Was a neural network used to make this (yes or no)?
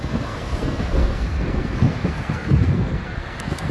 yes